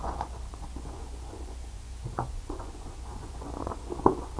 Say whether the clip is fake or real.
fake